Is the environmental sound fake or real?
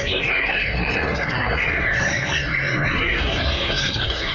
fake